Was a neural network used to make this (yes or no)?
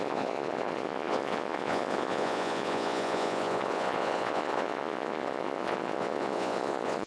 yes